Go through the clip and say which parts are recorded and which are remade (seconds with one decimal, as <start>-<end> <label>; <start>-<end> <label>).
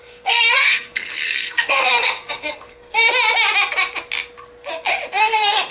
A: 0.0-3.0 remade; 3.0-5.1 recorded; 5.1-5.7 remade